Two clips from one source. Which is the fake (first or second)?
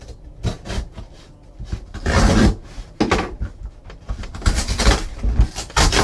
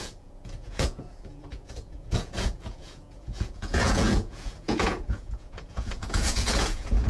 second